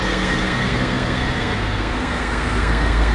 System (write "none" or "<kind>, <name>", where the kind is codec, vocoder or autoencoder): codec, SNAC